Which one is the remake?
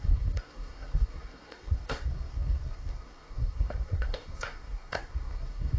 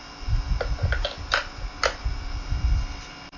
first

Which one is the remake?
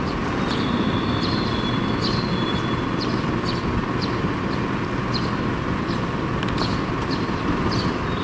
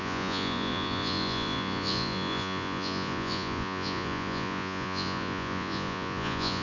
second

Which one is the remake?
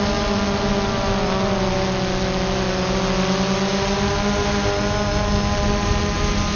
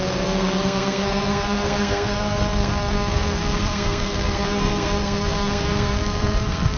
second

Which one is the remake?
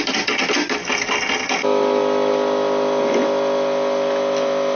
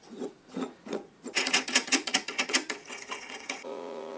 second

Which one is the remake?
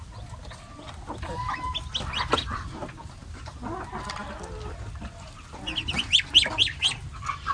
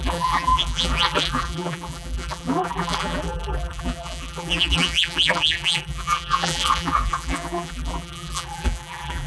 second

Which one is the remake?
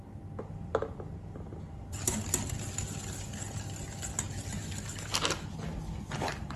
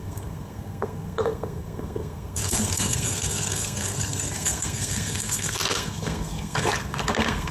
second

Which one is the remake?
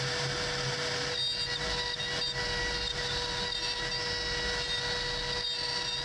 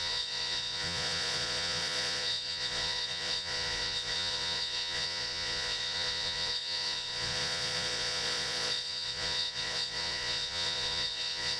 second